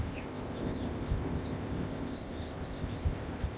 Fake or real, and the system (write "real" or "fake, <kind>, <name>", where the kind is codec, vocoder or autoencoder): fake, codec, ZipCodec